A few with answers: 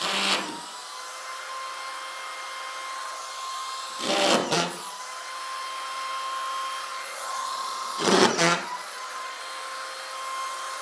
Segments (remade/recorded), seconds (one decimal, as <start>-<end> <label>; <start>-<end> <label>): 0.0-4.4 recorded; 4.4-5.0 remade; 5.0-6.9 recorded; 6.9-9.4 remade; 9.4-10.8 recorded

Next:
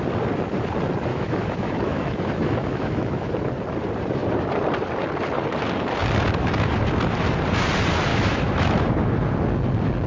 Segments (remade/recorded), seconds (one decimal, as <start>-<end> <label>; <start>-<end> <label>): 0.0-1.1 recorded; 1.1-3.3 remade; 3.3-8.1 recorded; 8.1-8.8 remade; 8.8-10.1 recorded

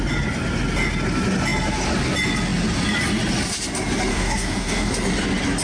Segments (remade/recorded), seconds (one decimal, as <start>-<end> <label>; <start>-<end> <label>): 0.0-4.1 recorded; 4.1-4.9 remade; 4.9-5.6 recorded